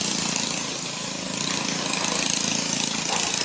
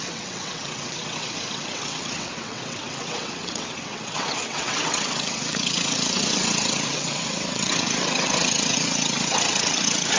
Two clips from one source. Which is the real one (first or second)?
first